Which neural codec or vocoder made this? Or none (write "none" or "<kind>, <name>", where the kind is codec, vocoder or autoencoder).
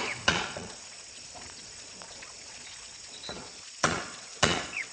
vocoder, Vocos